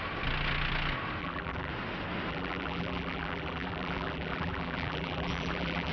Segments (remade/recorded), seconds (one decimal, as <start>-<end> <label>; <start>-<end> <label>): 0.0-1.2 recorded; 1.2-1.7 remade; 1.7-2.3 recorded; 2.3-5.9 remade